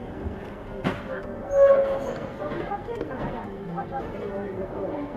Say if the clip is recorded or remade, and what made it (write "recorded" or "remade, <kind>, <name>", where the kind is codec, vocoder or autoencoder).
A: remade, codec, SNAC